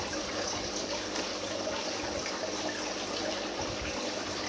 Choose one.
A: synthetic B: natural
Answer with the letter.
B